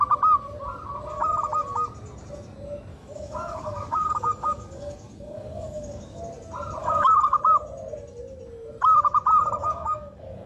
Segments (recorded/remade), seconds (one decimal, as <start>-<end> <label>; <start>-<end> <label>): 0.0-2.9 recorded; 2.9-6.2 remade; 6.2-6.8 recorded; 6.8-7.4 remade; 7.4-9.6 recorded; 9.6-10.5 remade

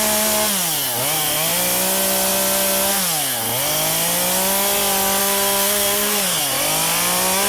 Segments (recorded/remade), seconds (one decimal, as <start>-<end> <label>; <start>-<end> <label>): 0.0-5.2 recorded; 5.2-6.4 remade; 6.4-7.5 recorded

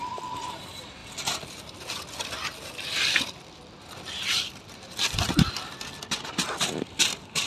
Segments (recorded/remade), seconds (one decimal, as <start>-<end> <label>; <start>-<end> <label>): 0.0-7.5 remade

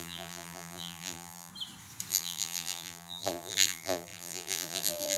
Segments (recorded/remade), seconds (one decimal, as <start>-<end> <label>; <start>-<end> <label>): 0.0-1.5 remade; 1.5-2.1 recorded; 2.1-5.2 remade

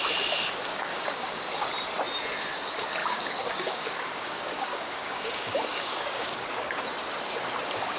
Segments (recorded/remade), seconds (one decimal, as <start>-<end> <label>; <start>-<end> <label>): 0.0-0.7 recorded; 0.7-1.7 remade; 1.7-3.0 recorded; 3.0-6.8 remade; 6.8-8.0 recorded

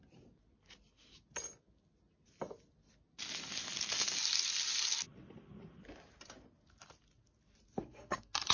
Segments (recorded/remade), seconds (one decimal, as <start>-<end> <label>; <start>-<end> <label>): 0.0-7.8 recorded; 7.8-8.5 remade